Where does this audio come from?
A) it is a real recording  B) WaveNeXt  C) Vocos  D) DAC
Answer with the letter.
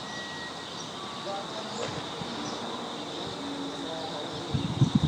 A